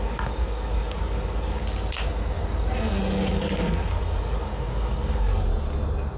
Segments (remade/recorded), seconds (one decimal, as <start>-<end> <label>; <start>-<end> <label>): 0.0-1.6 remade; 1.6-3.3 recorded; 3.3-5.5 remade; 5.5-6.2 recorded